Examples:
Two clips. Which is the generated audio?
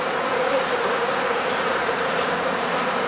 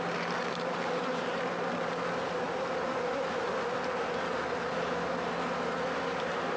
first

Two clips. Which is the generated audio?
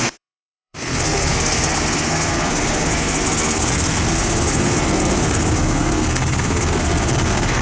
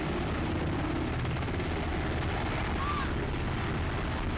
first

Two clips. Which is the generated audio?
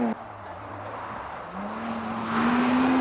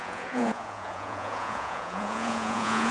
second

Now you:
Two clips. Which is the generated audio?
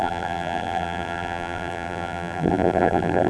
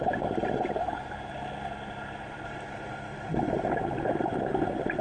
first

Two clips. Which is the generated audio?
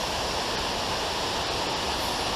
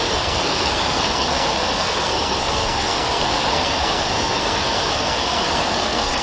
second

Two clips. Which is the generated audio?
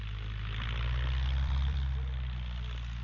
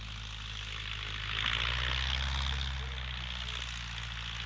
first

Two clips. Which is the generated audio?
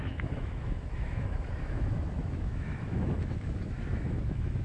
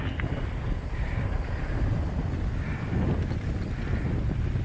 first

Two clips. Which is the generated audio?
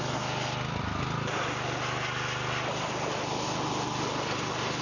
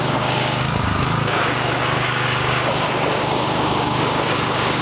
second